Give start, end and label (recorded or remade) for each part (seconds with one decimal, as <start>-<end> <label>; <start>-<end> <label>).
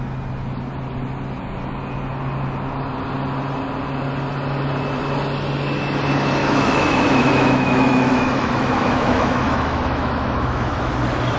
0.0-6.4 recorded; 6.4-10.9 remade; 10.9-11.4 recorded